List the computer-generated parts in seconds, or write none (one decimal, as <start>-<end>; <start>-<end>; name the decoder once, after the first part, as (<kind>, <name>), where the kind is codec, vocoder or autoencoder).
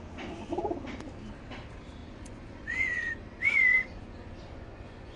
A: 2.0-5.2 (vocoder, Vocos)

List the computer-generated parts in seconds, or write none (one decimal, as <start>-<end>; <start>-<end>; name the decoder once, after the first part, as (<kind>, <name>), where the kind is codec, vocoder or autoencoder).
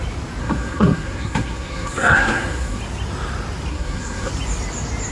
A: 0.4-2.8 (codec, SNAC); 3.7-4.3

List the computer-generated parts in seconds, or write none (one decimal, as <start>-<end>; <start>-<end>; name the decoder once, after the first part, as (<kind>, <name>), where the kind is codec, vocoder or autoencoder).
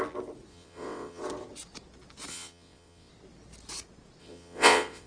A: 0.5-1.2 (vocoder, WaveNeXt); 2.3-3.1; 4.2-5.1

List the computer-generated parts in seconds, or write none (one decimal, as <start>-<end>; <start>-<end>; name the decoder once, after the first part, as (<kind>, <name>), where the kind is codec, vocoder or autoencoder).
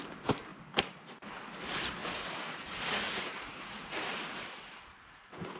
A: 2.0-5.6 (vocoder, Vocos)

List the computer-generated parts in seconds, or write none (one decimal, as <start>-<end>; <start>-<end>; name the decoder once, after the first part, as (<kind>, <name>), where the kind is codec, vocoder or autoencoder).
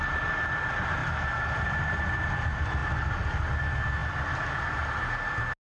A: 1.0-2.2 (vocoder, BigVGAN v2)